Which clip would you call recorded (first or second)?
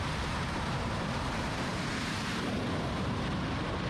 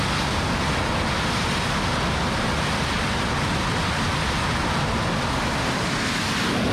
second